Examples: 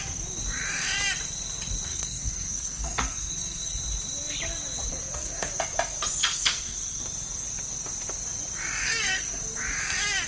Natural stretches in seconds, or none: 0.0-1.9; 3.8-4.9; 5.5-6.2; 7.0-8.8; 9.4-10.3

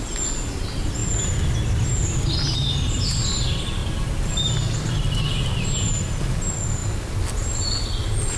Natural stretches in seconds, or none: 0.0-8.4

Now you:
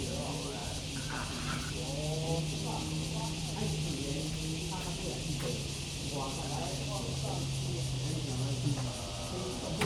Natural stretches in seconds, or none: 0.0-9.9

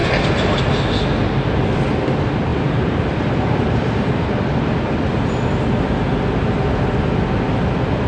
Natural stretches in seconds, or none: 0.6-2.5; 4.3-8.1

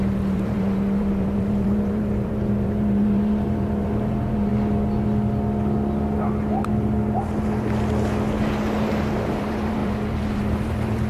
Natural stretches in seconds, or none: 4.5-9.1

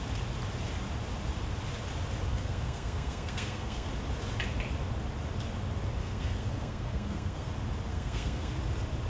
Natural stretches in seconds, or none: 0.0-2.3; 3.9-6.0; 7.5-7.9; 8.5-9.1